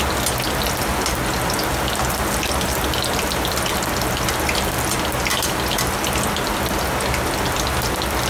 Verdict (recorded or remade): recorded